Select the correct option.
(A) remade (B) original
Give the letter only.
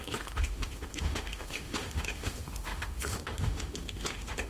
A